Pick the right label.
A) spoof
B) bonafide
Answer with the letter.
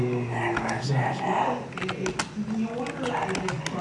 B